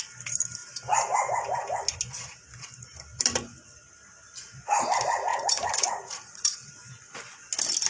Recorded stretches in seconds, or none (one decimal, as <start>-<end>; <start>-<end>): 0.0-5.3; 6.7-7.9